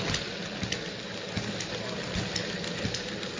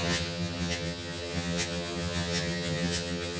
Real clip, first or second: first